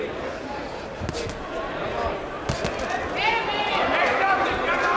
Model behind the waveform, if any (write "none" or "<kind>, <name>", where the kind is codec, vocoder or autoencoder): none